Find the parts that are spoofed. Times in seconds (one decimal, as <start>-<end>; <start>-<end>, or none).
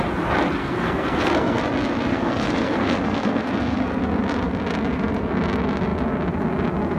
0.6-1.6; 2.1-4.0